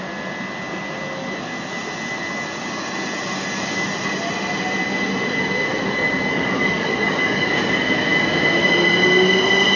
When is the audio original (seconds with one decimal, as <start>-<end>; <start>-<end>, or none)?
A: 0.0-6.3; 7.5-9.8